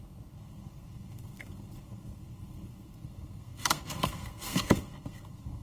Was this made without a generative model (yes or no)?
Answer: no